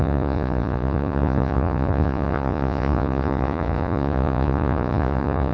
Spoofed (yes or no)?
yes